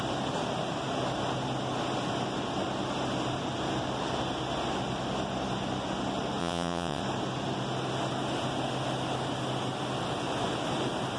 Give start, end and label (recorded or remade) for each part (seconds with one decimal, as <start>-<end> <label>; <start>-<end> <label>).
0.0-6.4 recorded; 6.4-7.0 remade; 7.0-11.2 recorded